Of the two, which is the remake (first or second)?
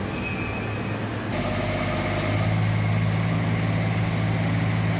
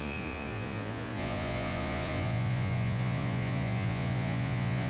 second